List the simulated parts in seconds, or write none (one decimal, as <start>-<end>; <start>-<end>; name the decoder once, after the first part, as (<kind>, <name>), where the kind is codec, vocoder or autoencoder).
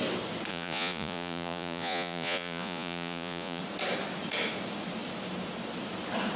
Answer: 0.5-3.6 (vocoder, Vocos)